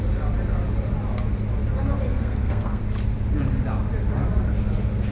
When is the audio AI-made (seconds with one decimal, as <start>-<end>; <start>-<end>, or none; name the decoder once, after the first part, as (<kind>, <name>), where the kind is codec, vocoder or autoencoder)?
2.1-2.8 (codec, SNAC)